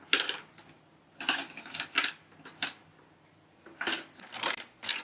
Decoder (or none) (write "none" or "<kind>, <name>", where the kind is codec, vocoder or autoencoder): none